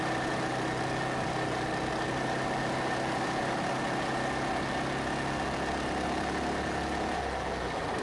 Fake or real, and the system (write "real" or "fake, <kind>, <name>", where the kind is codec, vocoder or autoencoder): real